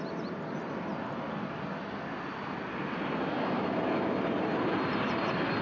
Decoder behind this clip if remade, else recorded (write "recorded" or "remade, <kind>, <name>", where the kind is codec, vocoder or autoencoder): recorded